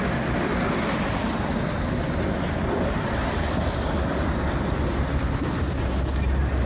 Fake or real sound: real